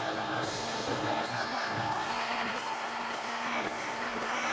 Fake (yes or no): yes